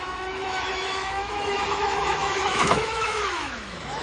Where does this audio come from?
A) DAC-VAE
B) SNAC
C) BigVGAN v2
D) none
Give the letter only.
A